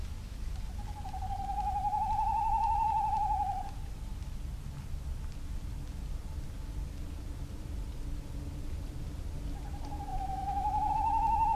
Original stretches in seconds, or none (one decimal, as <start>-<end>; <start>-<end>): 0.5-10.1; 10.9-11.5